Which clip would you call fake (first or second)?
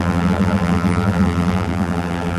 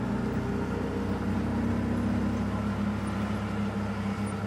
first